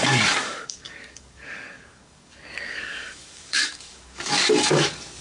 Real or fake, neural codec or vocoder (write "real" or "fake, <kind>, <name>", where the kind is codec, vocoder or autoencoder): fake, codec, DAC